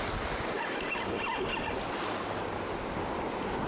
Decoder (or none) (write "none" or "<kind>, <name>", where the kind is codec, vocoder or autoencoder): none